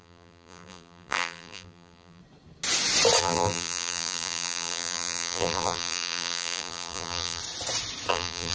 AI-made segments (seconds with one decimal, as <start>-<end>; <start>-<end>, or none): 0.0-2.2; 3.2-7.4; 8.1-8.5